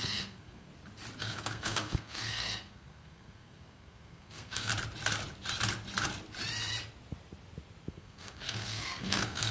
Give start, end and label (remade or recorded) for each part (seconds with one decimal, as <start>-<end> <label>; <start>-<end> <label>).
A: 0.0-0.7 remade; 0.7-1.2 recorded; 1.2-4.7 remade; 4.7-7.9 recorded; 7.9-9.5 remade